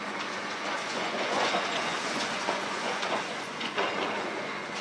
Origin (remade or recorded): remade